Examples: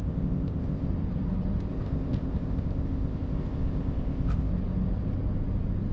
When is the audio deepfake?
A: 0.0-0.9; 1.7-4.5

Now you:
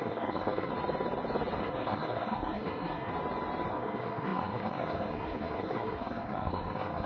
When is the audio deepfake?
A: 0.0-0.7; 1.6-3.1; 3.7-7.1